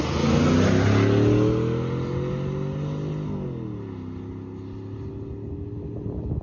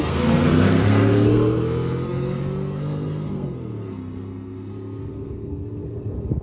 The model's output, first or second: second